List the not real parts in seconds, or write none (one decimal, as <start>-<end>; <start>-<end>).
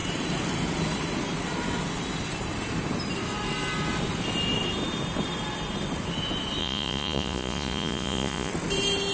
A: 6.6-8.5